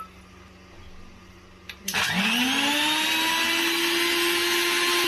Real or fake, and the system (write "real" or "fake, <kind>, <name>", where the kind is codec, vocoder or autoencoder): real